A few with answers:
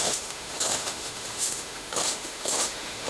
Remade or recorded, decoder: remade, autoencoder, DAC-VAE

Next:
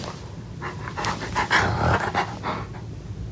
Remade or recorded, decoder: recorded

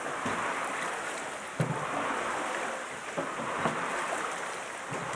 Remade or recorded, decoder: recorded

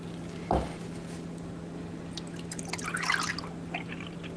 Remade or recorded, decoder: recorded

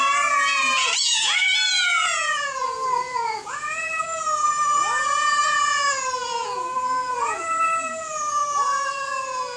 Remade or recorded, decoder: remade, vocoder, Vocos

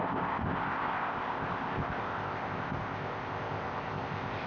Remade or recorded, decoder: remade, codec, ZipCodec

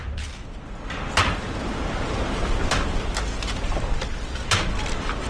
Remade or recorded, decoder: recorded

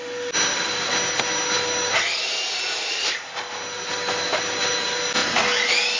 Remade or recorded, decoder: recorded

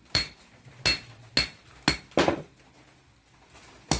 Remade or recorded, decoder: recorded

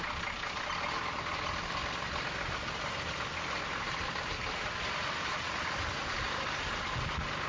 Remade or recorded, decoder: recorded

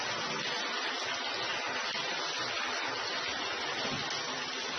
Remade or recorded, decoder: recorded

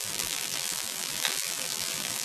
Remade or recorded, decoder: remade, vocoder, BigVGAN v2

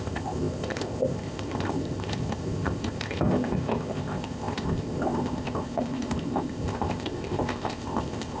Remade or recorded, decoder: remade, codec, ZipCodec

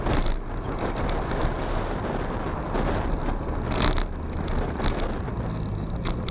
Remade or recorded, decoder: recorded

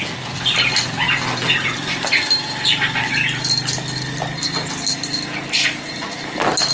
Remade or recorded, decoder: recorded